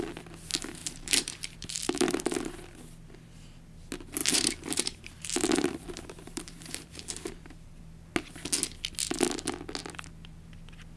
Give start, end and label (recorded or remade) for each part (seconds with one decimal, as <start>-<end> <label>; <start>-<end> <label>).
0.0-0.8 recorded; 0.8-2.5 remade; 2.5-4.2 recorded; 4.2-7.8 remade; 7.8-11.0 recorded